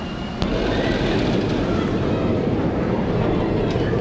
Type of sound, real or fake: real